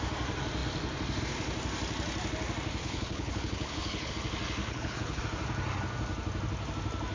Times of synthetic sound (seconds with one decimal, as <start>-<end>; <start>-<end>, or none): 2.8-4.1; 4.6-5.2